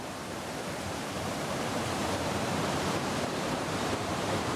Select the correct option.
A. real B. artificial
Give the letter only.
B